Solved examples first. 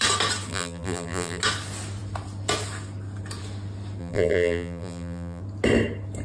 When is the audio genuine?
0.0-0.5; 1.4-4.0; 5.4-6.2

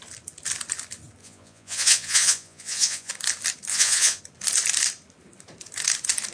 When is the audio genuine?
0.0-1.2; 3.1-3.7; 4.2-6.3

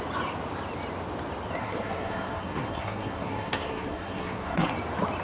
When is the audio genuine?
0.0-1.6; 4.7-5.2

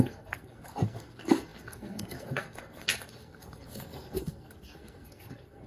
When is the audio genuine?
none

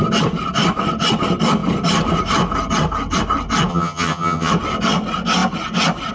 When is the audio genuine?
0.0-3.7; 4.5-6.1

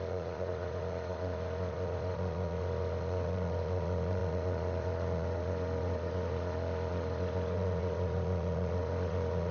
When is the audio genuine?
none

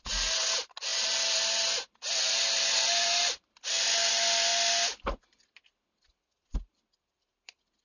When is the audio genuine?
0.0-7.8